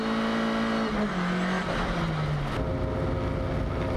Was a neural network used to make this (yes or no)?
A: no